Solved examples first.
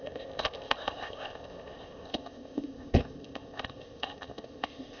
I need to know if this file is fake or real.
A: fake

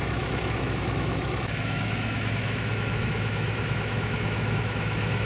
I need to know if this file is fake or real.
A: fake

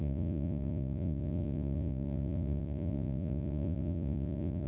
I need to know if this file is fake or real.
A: fake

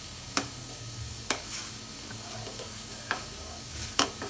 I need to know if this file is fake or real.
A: fake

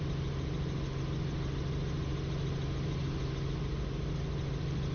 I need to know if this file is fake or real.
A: real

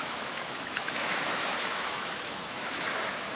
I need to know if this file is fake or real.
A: fake